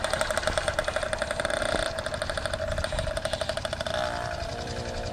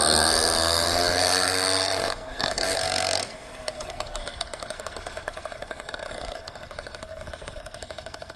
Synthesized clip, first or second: second